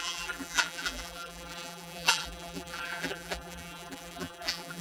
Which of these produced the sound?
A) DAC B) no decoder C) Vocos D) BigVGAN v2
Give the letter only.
D